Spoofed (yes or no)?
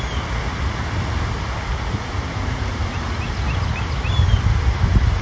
no